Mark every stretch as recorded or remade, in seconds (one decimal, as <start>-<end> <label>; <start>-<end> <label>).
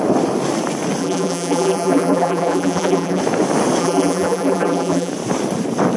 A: 0.0-1.0 recorded; 1.0-3.2 remade; 3.2-3.8 recorded; 3.8-5.1 remade; 5.1-6.0 recorded